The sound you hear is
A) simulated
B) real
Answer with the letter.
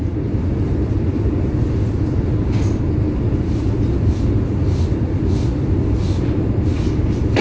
B